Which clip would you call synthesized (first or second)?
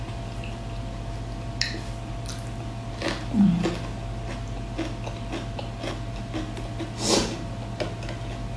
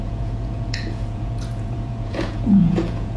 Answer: second